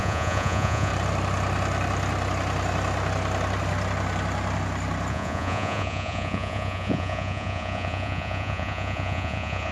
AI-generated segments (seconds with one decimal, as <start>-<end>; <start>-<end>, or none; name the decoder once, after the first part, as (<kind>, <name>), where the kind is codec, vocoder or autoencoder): 0.0-0.9 (vocoder, Vocos); 5.1-9.7